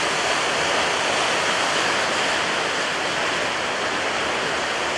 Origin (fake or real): real